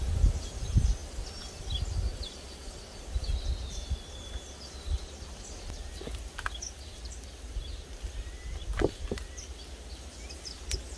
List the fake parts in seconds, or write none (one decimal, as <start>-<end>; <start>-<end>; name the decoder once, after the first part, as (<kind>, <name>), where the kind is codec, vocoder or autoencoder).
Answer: 1.0-1.6 (vocoder, BigVGAN v2); 6.9-10.3